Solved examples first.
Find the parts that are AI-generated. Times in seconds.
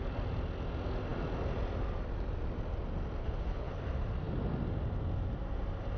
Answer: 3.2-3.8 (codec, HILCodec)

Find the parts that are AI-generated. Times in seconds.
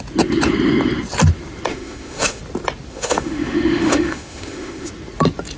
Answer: 1.7-2.4 (autoencoder, DAC-VAE); 2.9-4.9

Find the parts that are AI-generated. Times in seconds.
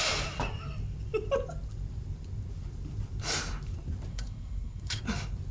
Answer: 4.1-5.0 (codec, SNAC)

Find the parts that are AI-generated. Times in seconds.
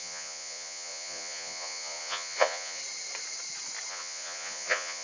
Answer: 0.0-2.8 (vocoder, Vocos); 3.9-5.0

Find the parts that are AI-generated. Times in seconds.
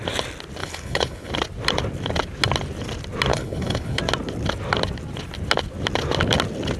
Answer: 0.6-1.3 (codec, HILCodec); 3.3-4.0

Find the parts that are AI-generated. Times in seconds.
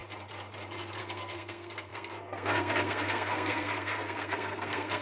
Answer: 1.0-5.0 (codec, SNAC)